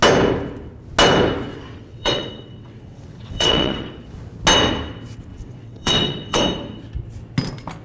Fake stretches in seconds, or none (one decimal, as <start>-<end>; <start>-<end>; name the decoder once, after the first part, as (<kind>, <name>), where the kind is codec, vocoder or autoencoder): 1.5-3.9 (vocoder, WaveNeXt); 5.3-6.4